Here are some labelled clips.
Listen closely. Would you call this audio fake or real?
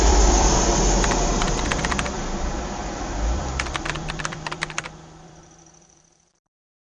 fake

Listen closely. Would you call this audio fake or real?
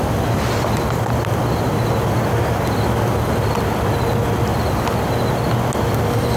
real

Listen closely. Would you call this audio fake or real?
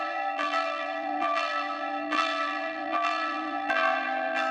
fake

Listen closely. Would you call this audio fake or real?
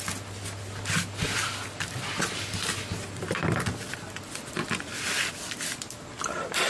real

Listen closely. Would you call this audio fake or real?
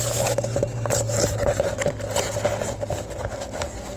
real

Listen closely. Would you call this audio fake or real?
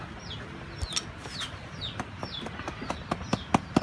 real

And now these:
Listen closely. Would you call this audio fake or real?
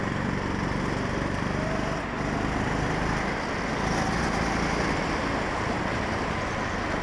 real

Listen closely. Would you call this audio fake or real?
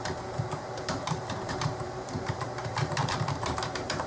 fake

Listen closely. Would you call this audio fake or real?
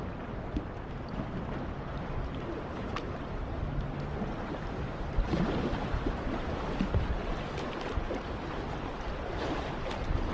fake